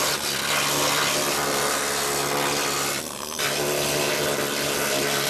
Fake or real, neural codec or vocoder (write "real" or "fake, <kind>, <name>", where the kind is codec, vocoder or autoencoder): real